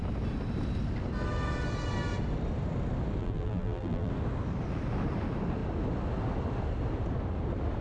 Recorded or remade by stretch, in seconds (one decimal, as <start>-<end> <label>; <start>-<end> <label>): 0.0-3.2 recorded; 3.2-4.1 remade; 4.1-7.8 recorded